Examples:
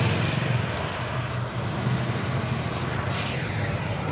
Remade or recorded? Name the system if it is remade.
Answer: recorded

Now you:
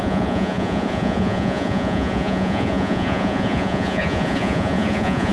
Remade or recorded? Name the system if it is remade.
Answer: remade, vocoder, Vocos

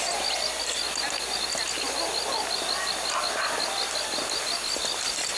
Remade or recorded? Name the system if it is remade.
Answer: recorded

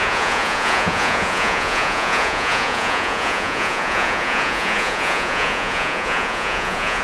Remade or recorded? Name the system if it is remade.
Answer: remade, vocoder, Vocos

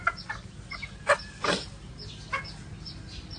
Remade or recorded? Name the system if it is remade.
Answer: recorded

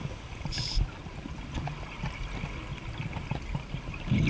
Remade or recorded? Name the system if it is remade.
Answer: recorded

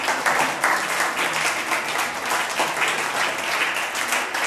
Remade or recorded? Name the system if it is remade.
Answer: recorded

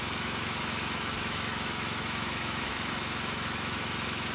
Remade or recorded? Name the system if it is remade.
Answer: remade, autoencoder, DAC-VAE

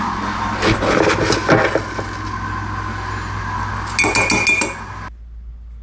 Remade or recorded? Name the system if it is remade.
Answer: recorded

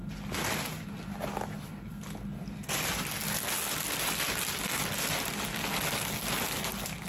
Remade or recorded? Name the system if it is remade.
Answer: recorded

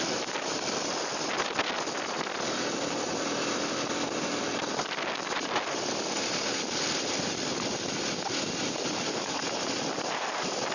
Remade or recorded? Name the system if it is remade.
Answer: recorded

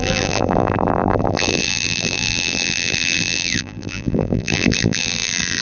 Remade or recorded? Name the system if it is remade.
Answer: remade, vocoder, BigVGAN v2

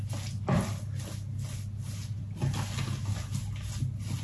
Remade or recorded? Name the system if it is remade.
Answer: recorded